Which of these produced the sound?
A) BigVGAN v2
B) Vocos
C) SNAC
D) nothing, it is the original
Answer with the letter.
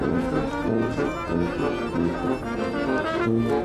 D